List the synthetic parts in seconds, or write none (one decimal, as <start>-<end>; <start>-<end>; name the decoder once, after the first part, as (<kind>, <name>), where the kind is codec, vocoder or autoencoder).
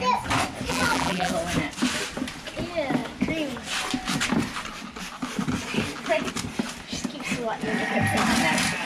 0.7-1.3 (vocoder, BigVGAN v2)